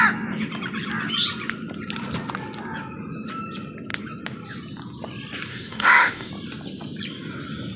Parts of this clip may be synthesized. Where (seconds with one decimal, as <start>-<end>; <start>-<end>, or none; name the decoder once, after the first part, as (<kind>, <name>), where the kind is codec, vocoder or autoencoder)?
5.5-6.3 (autoencoder, DAC-VAE)